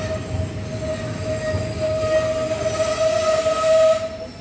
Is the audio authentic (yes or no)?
yes